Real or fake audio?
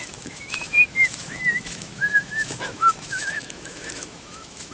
fake